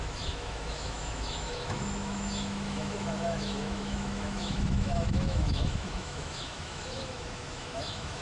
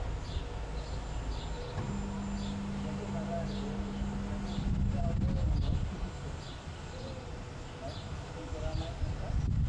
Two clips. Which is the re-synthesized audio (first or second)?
first